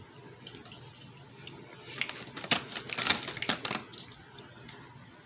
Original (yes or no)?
yes